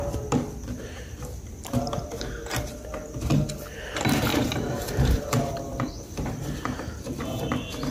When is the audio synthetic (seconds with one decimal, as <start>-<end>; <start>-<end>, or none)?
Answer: 4.3-7.4